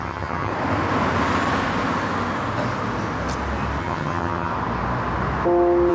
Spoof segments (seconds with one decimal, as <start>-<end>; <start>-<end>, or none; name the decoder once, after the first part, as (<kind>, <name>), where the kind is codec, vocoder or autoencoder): 0.0-0.5 (vocoder, HiFi-GAN); 3.8-4.5